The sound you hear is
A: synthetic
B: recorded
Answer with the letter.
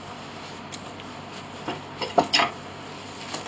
B